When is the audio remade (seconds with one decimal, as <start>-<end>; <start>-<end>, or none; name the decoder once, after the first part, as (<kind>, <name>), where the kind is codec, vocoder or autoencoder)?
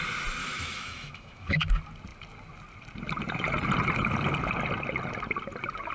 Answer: 0.4-1.7 (autoencoder, DAC-VAE)